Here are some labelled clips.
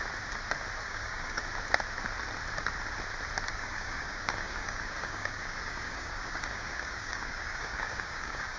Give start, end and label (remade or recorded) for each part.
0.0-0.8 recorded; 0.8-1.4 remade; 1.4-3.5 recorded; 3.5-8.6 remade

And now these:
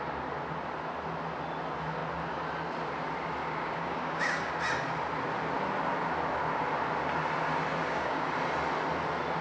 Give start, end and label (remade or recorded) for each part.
0.0-3.4 recorded; 3.4-4.5 remade; 4.5-7.8 recorded; 7.8-8.3 remade; 8.3-9.4 recorded

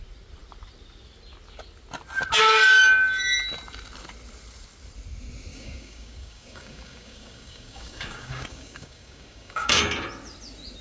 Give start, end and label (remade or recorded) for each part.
0.0-5.5 recorded; 5.5-9.8 remade; 9.8-10.8 recorded

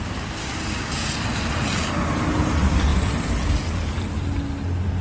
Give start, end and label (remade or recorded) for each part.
0.0-0.4 recorded; 0.4-1.1 remade; 1.1-5.0 recorded

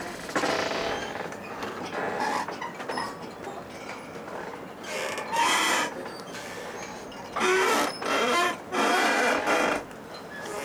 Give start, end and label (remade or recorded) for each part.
0.0-1.0 recorded; 1.0-1.7 remade; 1.7-10.6 recorded